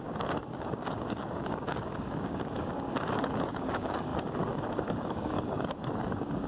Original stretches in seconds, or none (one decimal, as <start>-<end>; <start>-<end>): none

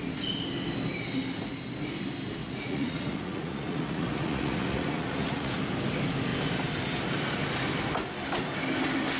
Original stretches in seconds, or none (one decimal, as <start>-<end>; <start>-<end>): 0.0-2.4; 5.6-9.2

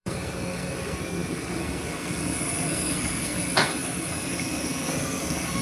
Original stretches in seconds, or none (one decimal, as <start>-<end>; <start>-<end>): none